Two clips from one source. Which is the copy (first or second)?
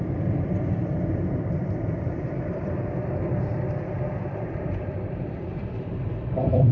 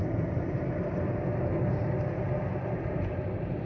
first